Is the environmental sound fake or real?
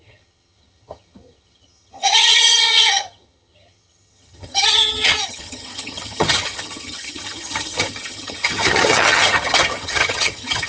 fake